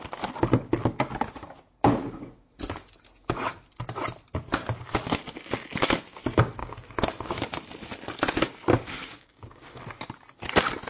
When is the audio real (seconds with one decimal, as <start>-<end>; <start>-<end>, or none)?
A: 0.0-6.6; 7.4-9.0; 9.8-10.9